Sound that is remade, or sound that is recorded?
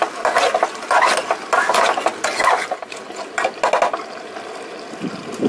recorded